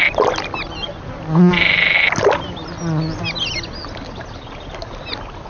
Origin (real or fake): real